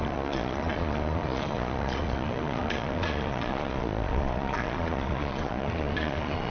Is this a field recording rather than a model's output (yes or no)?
no